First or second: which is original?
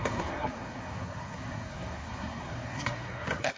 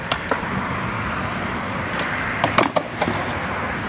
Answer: second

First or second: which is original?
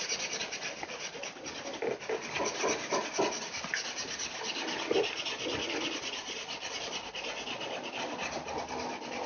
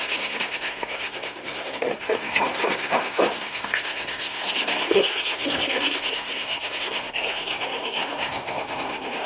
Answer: first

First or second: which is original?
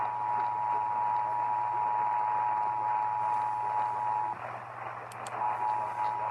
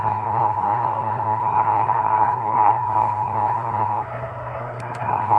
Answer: first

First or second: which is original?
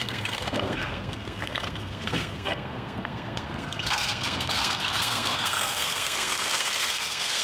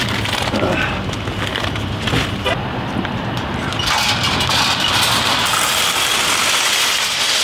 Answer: second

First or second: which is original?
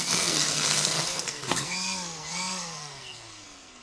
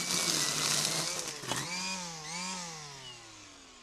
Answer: second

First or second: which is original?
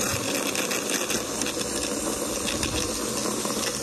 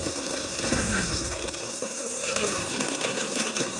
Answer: first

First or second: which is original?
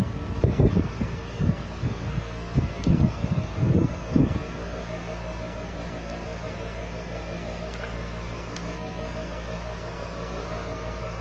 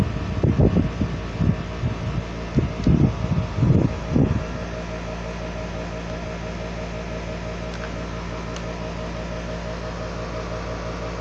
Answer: second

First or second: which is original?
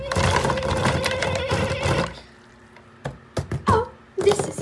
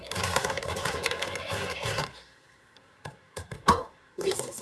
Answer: first